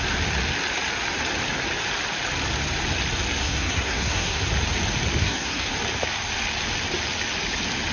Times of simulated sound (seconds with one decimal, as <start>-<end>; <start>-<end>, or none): 3.4-4.4; 5.2-5.7